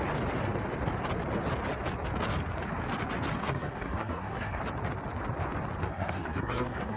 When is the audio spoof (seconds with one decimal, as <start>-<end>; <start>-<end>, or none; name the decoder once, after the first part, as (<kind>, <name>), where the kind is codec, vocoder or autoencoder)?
3.4-4.6 (codec, SNAC); 5.8-7.0